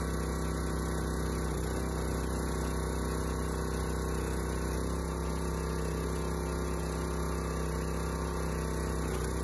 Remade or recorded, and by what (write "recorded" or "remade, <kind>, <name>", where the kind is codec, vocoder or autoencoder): recorded